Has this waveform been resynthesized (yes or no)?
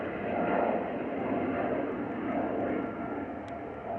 no